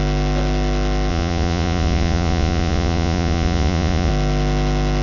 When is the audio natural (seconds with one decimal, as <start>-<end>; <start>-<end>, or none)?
0.0-1.1; 4.1-5.0